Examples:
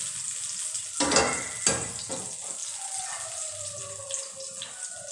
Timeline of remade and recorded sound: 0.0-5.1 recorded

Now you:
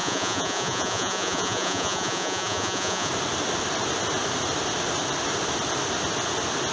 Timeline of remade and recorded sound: 0.0-3.1 remade; 3.1-6.7 recorded

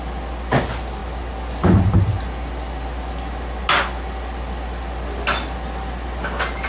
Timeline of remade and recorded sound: 0.0-6.7 recorded

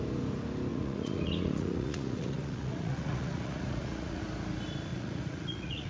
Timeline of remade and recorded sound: 0.0-0.7 recorded; 0.7-4.2 remade; 4.2-4.9 recorded; 4.9-5.9 remade

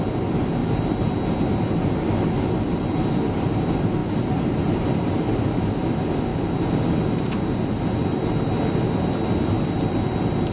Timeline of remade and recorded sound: 0.0-10.5 recorded

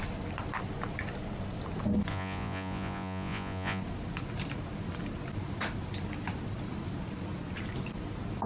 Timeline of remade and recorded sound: 0.0-2.1 recorded; 2.1-3.8 remade; 3.8-8.5 recorded